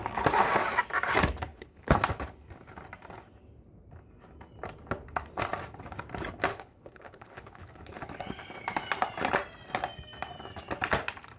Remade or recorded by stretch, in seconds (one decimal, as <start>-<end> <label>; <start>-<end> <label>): 0.0-1.5 recorded; 1.5-2.0 remade; 2.0-6.5 recorded; 6.5-7.8 remade; 7.8-11.4 recorded